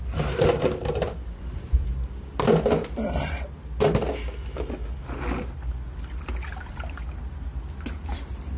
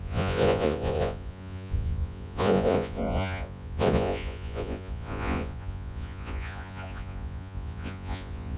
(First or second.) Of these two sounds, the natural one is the first